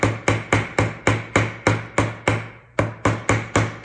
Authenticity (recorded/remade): recorded